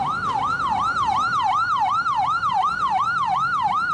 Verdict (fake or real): real